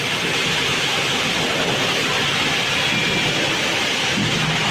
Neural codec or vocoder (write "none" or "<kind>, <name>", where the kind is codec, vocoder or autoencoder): none